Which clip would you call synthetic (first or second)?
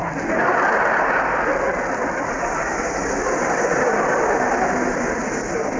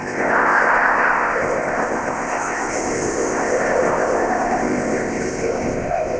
second